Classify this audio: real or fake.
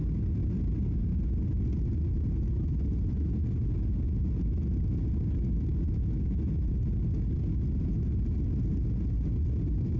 real